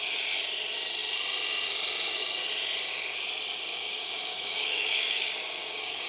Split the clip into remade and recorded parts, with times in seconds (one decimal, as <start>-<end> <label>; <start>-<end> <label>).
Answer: 0.0-3.7 recorded; 3.7-6.1 remade